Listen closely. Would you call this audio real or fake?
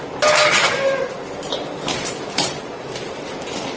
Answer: real